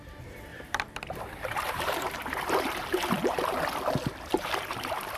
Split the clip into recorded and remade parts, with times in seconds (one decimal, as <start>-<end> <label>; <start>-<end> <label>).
0.0-0.5 recorded; 0.5-3.6 remade; 3.6-4.3 recorded; 4.3-5.2 remade